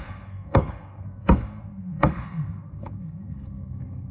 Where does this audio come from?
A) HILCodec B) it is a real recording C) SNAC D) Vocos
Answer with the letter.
C